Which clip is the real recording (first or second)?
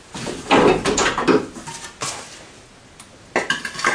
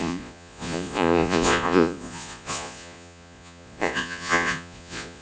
first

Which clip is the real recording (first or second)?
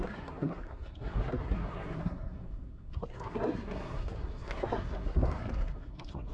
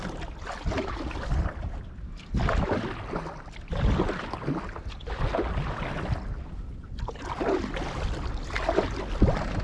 second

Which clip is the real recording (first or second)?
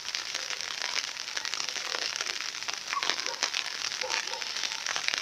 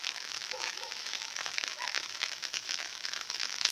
first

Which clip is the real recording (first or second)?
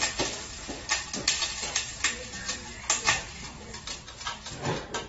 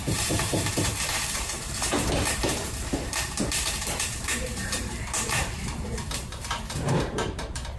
first